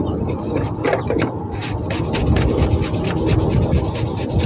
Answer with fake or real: real